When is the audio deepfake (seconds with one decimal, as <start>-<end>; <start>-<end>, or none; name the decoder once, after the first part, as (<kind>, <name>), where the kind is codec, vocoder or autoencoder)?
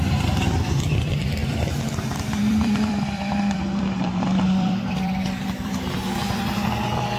1.4-5.7 (vocoder, BigVGAN v2)